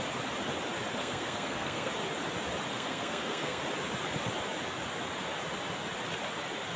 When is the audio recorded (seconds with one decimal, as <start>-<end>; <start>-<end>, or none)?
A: 0.0-1.0; 1.9-2.7; 3.6-6.8